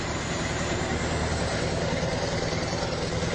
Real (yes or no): no